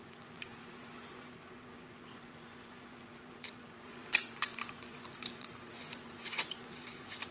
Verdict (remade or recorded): remade